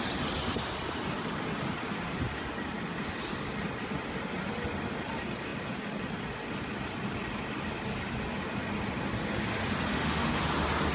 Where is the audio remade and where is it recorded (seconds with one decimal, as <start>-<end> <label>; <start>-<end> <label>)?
0.0-9.9 recorded; 9.9-10.4 remade; 10.4-10.9 recorded